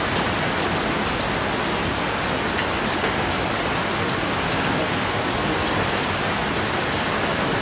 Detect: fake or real real